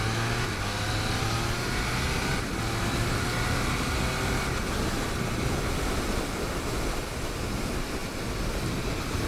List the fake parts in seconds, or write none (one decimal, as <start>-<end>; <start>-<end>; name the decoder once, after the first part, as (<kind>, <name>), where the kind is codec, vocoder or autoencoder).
none

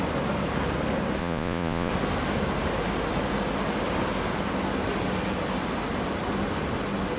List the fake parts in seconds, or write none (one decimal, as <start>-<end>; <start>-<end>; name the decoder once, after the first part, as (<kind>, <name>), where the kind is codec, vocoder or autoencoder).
1.2-1.9 (vocoder, Vocos)

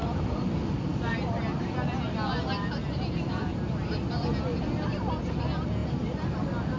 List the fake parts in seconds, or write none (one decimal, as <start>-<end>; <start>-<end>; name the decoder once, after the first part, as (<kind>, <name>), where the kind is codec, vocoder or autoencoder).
none

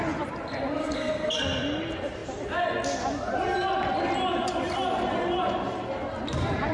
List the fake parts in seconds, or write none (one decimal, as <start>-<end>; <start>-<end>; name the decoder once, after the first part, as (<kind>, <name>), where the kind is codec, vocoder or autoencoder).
0.8-1.3 (codec, SNAC)

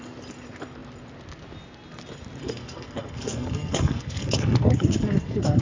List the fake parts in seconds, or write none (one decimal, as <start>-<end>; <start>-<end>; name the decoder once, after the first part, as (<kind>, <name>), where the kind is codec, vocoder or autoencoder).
2.4-5.6 (codec, SNAC)

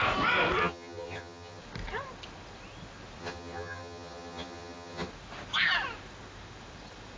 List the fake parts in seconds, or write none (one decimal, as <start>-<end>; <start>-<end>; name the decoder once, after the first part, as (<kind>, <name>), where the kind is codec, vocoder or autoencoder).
0.6-1.6 (vocoder, HiFi-GAN); 3.2-5.1

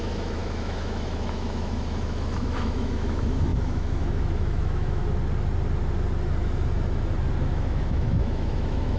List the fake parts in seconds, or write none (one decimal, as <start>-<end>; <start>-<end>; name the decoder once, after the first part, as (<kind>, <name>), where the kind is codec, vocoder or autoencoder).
0.0-5.0 (autoencoder, DAC-VAE); 7.5-9.0